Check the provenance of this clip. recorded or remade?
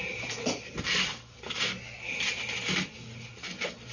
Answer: recorded